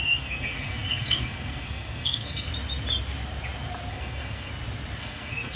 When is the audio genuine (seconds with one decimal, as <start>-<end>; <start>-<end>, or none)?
2.5-3.9; 4.5-5.0